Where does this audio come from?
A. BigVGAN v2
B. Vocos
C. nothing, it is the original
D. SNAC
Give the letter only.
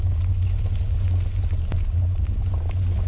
C